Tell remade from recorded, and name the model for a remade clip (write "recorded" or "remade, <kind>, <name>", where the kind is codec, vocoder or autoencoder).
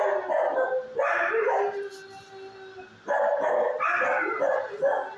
recorded